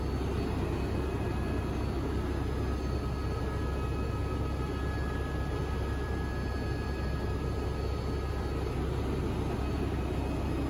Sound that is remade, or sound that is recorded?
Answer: recorded